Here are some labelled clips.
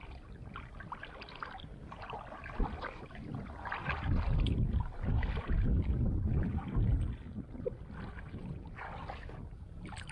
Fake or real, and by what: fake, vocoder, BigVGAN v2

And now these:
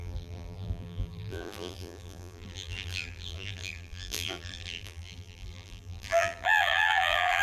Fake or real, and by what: fake, vocoder, BigVGAN v2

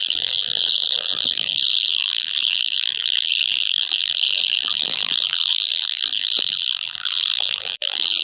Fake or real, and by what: fake, vocoder, BigVGAN v2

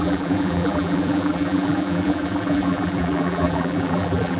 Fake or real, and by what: fake, vocoder, BigVGAN v2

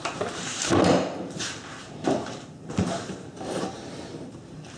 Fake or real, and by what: fake, vocoder, BigVGAN v2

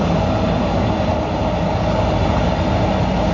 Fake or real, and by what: real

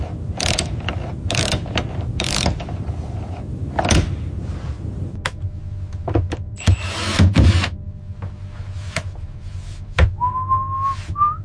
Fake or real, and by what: real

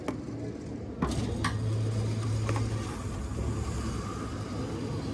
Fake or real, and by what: real